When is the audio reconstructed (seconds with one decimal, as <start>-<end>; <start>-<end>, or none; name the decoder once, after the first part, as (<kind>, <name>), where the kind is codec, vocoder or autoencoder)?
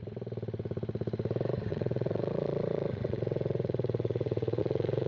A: 1.7-5.1 (vocoder, Vocos)